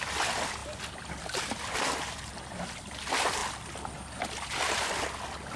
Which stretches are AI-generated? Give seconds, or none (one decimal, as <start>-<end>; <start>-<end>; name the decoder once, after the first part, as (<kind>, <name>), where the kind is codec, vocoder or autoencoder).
none